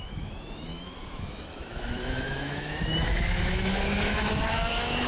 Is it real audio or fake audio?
fake